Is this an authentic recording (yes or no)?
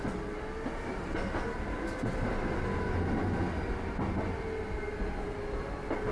yes